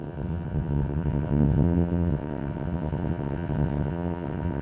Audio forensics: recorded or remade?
remade